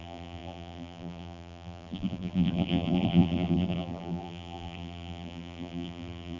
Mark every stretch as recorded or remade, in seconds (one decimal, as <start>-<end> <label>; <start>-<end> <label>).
0.0-6.4 remade